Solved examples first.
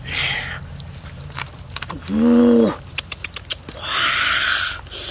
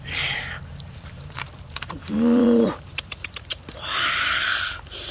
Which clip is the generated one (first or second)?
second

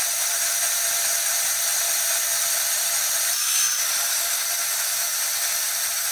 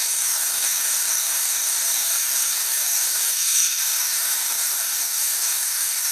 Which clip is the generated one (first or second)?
second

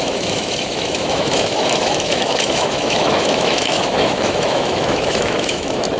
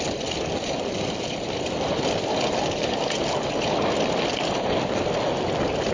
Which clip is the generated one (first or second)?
first